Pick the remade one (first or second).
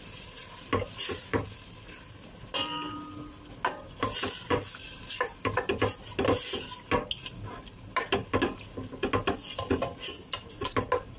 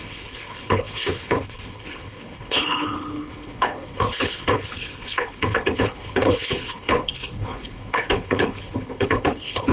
second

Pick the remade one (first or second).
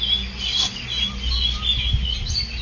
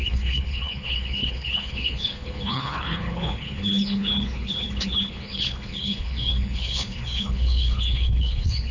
second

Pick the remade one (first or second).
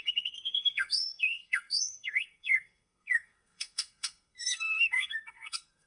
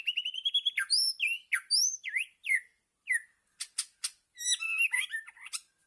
first